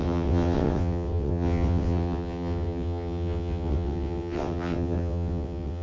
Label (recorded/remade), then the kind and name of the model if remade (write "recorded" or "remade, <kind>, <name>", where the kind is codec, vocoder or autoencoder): remade, vocoder, WaveNeXt